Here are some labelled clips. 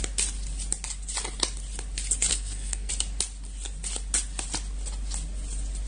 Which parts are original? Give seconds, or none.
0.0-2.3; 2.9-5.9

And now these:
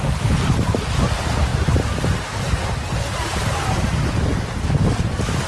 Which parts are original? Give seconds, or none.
0.0-5.5